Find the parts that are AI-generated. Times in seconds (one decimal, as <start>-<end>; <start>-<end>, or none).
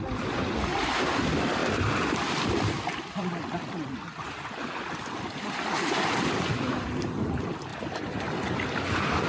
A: 0.0-7.7